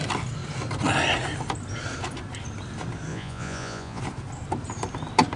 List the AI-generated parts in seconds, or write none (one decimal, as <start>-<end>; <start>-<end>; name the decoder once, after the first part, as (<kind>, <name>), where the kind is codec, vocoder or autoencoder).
3.1-4.0 (vocoder, Vocos)